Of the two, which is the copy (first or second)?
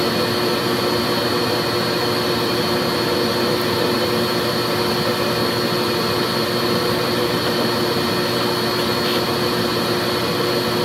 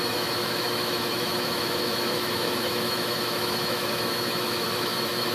second